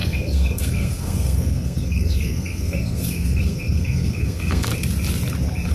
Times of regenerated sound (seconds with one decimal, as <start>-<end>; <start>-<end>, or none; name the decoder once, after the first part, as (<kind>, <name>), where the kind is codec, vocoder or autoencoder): 0.0-4.7 (codec, SNAC)